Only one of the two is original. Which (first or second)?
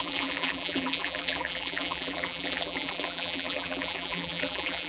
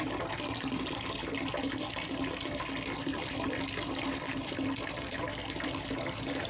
second